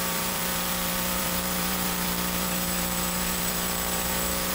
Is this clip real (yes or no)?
no